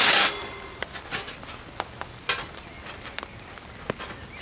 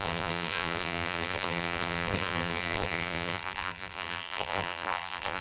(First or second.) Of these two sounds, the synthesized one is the second